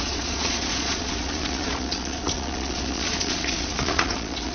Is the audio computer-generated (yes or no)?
yes